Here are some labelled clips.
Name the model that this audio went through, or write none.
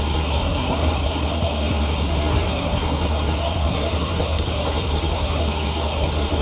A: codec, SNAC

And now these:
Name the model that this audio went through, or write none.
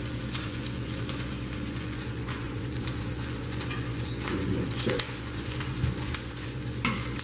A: vocoder, Vocos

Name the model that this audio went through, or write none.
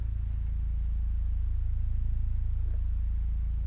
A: none